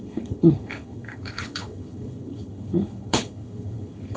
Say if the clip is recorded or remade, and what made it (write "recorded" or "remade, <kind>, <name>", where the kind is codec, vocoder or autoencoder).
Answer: remade, codec, HILCodec